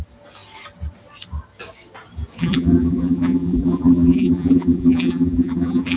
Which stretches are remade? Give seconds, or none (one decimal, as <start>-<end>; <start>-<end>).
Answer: 2.4-6.0